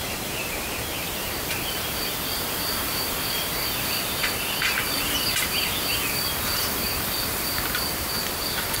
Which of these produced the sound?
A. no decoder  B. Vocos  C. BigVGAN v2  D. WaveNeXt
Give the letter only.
A